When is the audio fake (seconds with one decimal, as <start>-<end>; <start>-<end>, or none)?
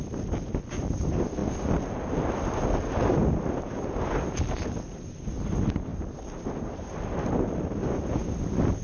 0.0-1.4; 5.0-5.9; 8.2-8.8